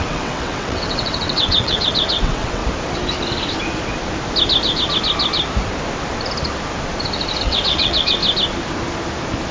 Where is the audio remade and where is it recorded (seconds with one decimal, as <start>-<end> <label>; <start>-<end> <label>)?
0.0-2.6 remade; 2.6-7.4 recorded; 7.4-8.2 remade; 8.2-9.5 recorded